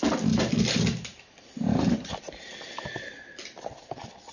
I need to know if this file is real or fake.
real